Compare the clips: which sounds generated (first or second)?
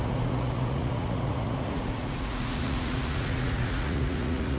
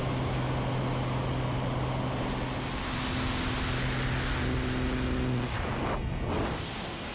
first